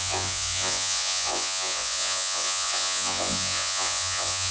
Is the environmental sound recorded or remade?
remade